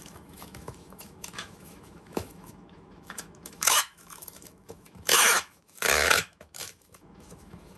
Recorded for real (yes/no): no